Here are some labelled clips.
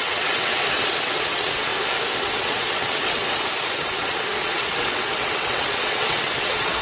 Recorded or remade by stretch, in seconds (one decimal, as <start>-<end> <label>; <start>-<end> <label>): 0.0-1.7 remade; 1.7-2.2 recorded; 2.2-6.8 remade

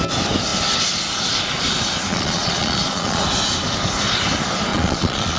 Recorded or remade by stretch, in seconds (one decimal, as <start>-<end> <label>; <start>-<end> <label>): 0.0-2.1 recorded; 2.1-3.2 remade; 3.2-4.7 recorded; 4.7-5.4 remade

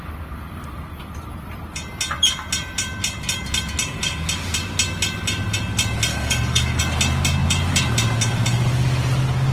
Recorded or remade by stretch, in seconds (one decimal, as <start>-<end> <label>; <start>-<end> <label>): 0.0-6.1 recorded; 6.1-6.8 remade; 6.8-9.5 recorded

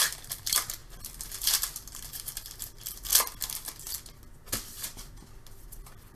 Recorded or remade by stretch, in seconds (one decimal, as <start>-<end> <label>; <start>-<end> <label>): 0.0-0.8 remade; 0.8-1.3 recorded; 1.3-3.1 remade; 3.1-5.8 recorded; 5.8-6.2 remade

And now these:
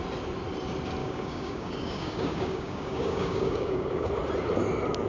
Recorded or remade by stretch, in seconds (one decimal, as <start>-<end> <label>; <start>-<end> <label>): 0.0-1.0 recorded; 1.0-4.1 remade; 4.1-5.1 recorded

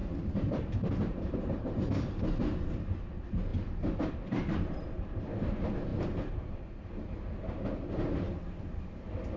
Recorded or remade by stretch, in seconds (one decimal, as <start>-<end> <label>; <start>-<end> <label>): 0.0-1.8 remade; 1.8-5.9 recorded; 5.9-6.7 remade; 6.7-9.4 recorded

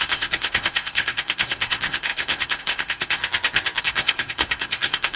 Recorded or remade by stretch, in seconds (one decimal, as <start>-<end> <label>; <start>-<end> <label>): 0.0-3.2 remade; 3.2-3.8 recorded; 3.8-5.2 remade